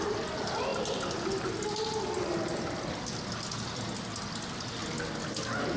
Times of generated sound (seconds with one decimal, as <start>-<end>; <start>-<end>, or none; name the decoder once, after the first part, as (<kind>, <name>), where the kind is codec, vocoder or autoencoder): none